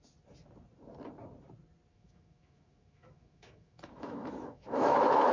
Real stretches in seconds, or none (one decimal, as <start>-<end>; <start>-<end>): 0.0-1.9